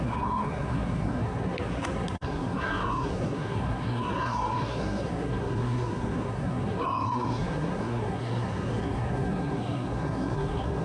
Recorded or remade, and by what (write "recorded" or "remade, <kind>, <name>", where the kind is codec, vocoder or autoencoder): remade, codec, SNAC